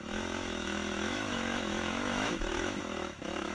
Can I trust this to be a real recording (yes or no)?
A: no